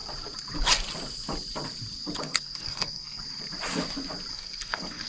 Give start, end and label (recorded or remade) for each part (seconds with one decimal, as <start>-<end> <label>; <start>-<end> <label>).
0.0-2.2 recorded; 2.2-3.2 remade; 3.2-4.3 recorded; 4.3-5.1 remade